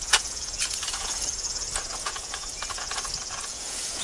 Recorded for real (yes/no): no